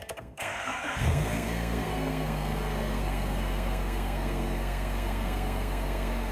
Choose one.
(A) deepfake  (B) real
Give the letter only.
A